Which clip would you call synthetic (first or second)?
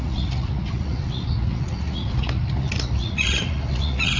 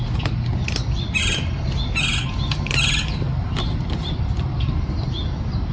first